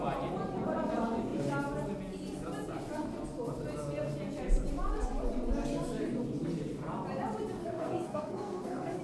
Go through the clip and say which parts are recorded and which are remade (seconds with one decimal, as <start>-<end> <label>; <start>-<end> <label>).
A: 0.0-7.6 recorded; 7.6-9.0 remade